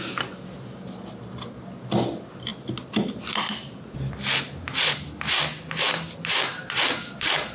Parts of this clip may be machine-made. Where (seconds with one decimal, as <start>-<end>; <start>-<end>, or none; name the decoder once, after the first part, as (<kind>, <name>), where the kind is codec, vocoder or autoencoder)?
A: none